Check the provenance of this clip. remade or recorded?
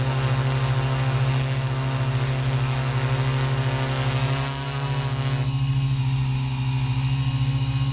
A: recorded